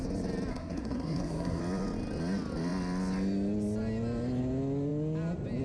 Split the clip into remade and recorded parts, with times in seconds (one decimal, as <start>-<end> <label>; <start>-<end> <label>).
0.0-0.5 recorded; 0.5-1.6 remade; 1.6-5.6 recorded